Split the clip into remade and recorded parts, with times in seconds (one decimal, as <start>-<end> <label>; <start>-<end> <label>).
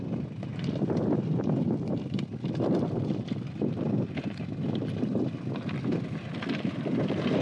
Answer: 0.0-7.4 recorded